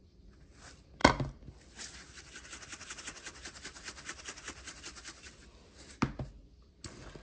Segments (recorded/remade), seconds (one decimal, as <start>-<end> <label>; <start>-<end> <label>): 0.0-7.2 recorded